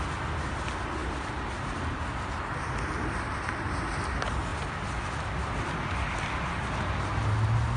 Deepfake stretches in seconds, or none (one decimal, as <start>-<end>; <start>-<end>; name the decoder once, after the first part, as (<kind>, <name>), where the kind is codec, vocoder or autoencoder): none